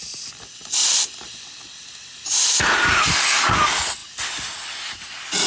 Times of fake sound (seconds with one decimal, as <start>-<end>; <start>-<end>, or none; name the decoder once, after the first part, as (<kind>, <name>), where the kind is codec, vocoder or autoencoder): none